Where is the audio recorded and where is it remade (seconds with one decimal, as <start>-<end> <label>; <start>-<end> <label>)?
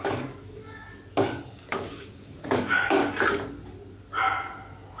0.0-0.6 remade; 0.6-1.7 recorded; 1.7-3.0 remade; 3.0-5.0 recorded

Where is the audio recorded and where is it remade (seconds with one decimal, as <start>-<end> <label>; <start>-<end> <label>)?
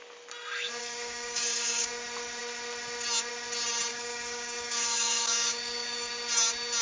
0.0-0.8 recorded; 0.8-1.9 remade; 1.9-3.9 recorded; 3.9-6.1 remade; 6.1-6.8 recorded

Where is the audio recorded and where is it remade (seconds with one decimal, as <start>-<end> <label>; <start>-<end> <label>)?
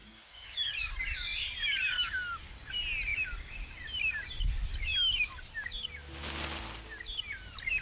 0.0-0.7 remade; 0.7-7.8 recorded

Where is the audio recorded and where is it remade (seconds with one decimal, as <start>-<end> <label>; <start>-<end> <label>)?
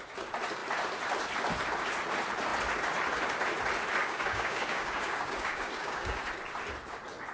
0.0-4.0 recorded; 4.0-6.2 remade; 6.2-7.3 recorded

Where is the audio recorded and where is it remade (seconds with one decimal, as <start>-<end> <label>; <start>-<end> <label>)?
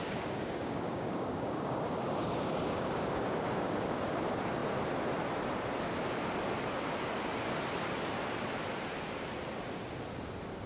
0.0-4.1 remade; 4.1-10.7 recorded